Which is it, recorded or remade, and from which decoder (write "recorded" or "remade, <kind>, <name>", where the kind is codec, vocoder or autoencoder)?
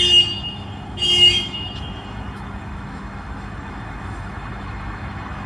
remade, autoencoder, DAC-VAE